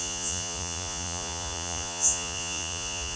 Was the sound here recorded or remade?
remade